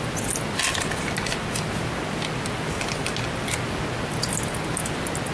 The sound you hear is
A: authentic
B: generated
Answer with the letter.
A